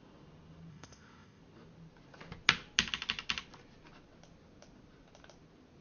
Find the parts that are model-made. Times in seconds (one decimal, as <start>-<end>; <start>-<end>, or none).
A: 0.7-1.4